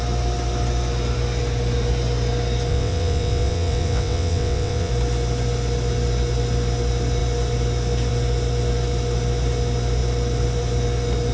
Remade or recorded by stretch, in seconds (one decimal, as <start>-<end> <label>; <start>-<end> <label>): 0.0-2.7 recorded; 2.7-4.9 remade; 4.9-11.3 recorded